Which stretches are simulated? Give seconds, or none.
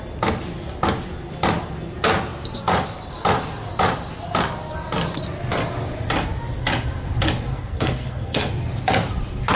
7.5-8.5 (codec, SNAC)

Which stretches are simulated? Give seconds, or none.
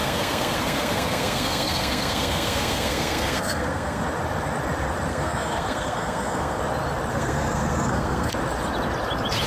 0.0-4.0 (codec, SNAC); 5.1-6.6; 7.1-8.3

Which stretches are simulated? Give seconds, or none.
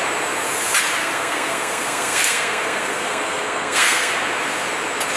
1.0-4.1 (codec, SNAC)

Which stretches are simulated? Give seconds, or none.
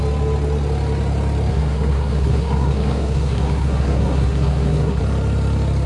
1.5-5.0 (codec, SNAC)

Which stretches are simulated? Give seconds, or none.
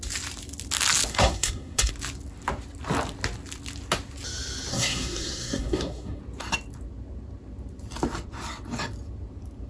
1.1-1.9 (codec, SNAC); 4.7-6.2